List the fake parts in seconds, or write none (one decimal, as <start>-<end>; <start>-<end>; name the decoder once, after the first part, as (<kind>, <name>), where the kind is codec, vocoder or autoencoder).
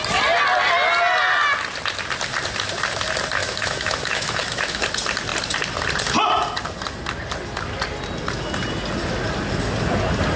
3.4-4.8 (autoencoder, DAC-VAE)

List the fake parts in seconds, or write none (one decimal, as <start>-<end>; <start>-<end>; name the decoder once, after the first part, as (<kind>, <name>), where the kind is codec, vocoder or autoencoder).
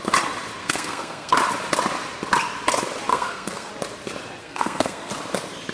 0.6-1.3 (codec, SNAC); 3.1-3.7; 4.4-5.1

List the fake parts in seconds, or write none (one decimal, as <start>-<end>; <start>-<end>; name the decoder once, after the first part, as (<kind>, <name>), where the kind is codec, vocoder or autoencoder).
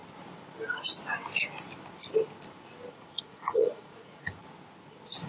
2.9-4.4 (vocoder, Vocos)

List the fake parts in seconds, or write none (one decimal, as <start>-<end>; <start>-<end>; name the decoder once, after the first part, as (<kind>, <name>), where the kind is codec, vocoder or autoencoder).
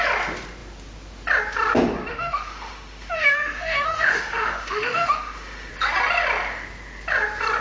2.1-5.7 (autoencoder, DAC-VAE)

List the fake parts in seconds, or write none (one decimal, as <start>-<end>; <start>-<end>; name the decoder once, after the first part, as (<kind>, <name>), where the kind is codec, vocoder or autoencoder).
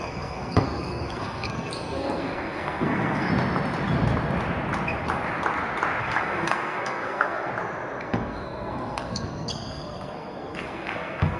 0.0-3.3 (codec, SNAC); 6.0-7.5; 8.0-11.4